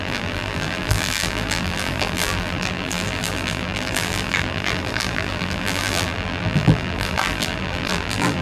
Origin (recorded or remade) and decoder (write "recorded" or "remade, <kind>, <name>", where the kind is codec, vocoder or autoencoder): remade, vocoder, BigVGAN v2